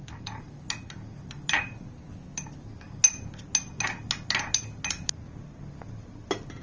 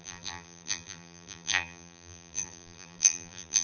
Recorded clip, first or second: first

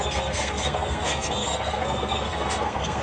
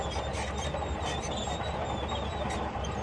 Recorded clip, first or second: second